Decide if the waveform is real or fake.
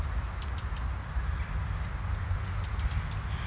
real